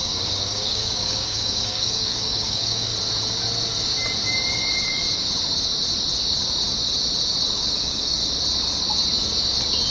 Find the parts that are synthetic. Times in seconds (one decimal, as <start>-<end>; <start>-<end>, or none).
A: 0.0-2.9; 7.6-8.2